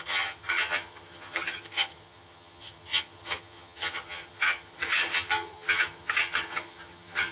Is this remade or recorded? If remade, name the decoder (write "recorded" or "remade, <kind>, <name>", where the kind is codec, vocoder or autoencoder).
remade, vocoder, HiFi-GAN